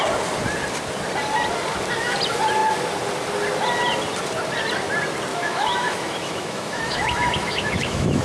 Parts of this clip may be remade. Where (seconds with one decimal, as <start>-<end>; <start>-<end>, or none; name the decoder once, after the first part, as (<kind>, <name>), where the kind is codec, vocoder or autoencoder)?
5.3-8.2 (autoencoder, DAC-VAE)